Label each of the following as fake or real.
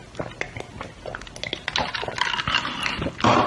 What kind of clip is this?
real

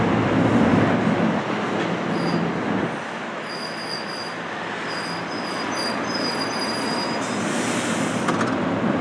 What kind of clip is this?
real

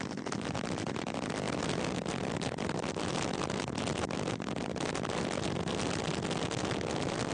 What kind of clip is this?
real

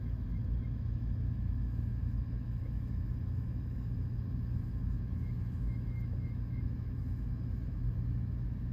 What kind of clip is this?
fake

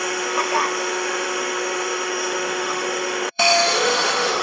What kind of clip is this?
fake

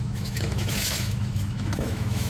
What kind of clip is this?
fake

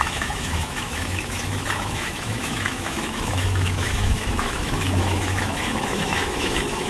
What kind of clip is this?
fake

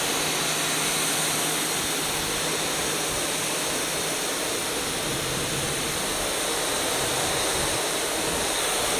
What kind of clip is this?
real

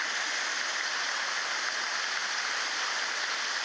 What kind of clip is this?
real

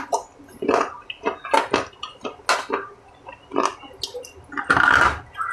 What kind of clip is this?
real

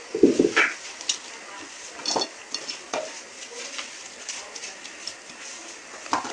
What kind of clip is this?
real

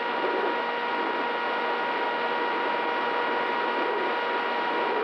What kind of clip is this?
real